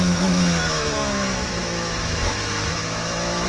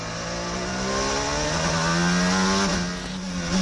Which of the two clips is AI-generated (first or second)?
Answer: first